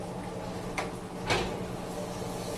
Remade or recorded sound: recorded